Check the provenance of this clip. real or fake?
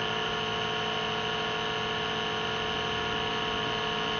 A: real